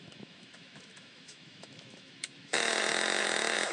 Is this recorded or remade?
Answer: remade